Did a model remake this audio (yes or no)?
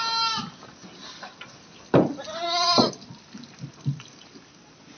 no